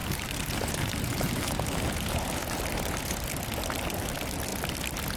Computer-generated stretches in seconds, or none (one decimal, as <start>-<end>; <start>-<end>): 0.0-2.6